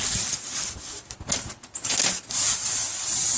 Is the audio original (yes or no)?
yes